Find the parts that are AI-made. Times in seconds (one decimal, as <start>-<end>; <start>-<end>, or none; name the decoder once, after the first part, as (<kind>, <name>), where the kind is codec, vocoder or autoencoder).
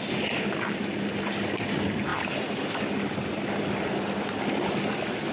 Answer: none